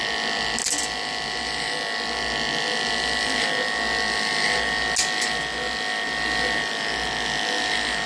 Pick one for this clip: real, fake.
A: real